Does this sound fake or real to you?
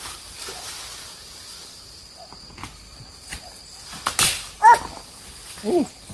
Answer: real